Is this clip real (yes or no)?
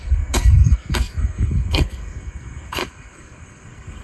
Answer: no